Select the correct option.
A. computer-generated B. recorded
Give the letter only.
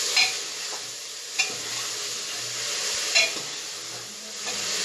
B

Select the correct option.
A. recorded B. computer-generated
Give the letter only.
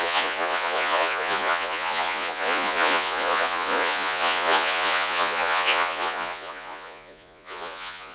B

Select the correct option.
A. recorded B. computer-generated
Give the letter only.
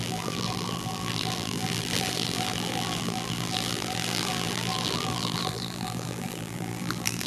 B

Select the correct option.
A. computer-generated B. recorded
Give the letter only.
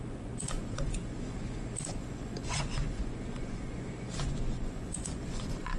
A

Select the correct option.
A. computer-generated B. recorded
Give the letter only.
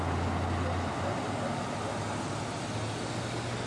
B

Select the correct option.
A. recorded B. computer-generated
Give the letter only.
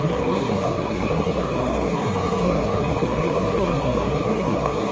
B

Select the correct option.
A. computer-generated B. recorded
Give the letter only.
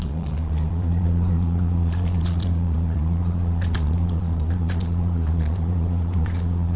A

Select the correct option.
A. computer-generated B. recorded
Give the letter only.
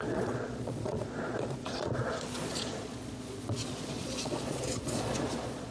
A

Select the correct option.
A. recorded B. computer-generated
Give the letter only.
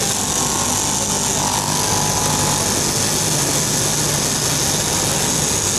A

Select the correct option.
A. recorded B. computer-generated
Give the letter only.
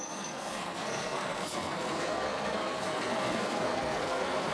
B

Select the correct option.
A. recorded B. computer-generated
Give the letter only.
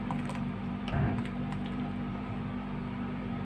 B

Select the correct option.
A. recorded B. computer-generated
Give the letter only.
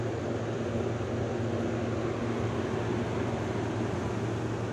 A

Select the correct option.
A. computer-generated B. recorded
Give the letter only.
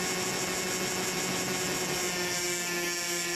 B